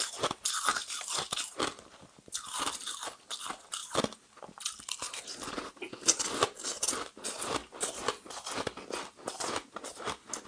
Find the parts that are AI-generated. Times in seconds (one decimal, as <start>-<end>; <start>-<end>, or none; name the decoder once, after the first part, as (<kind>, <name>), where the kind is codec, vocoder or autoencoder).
none